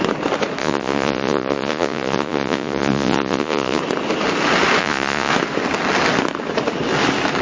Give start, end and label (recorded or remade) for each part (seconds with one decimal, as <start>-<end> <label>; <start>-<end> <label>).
0.0-0.6 recorded; 0.6-3.8 remade; 3.8-4.8 recorded; 4.8-5.3 remade; 5.3-7.4 recorded